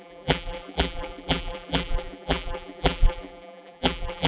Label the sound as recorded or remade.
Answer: remade